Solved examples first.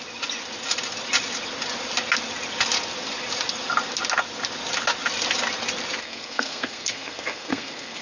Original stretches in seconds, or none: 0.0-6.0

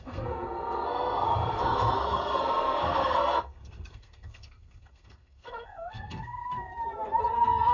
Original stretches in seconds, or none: 6.7-7.7

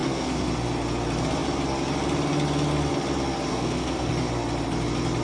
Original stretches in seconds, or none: 0.5-3.5; 4.1-5.2

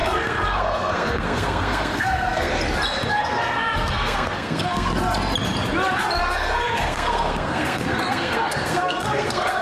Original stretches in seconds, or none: 2.5-3.1; 4.9-6.2